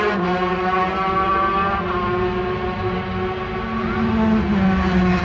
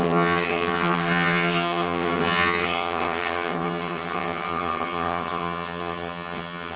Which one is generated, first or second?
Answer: second